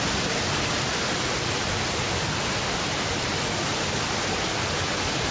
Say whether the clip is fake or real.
real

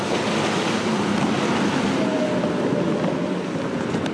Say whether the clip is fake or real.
real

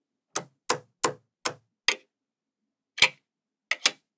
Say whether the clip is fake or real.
real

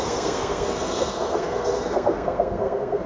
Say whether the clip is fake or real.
fake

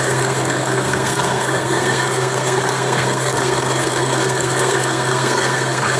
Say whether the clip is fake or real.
fake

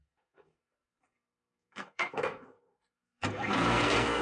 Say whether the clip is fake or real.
fake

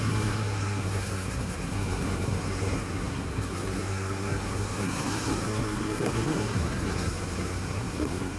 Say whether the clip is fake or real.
fake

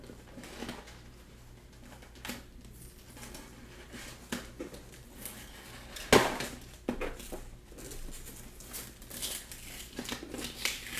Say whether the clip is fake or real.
real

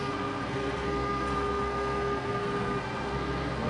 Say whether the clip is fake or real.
fake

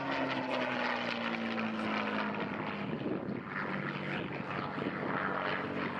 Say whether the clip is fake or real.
real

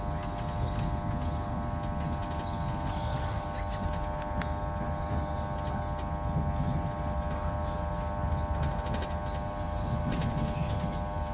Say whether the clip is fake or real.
real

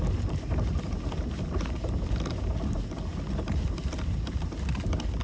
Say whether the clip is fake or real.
real